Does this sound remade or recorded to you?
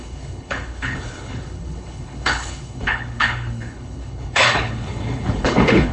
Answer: remade